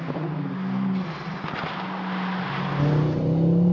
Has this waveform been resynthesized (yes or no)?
no